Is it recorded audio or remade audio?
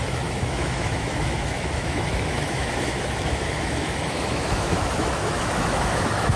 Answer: remade